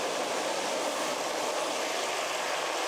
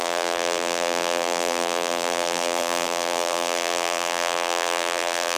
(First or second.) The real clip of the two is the first